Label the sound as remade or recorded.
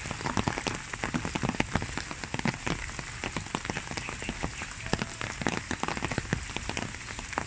recorded